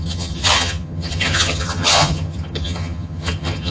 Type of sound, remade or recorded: remade